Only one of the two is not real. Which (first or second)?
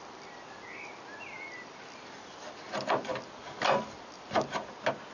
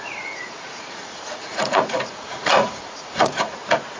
second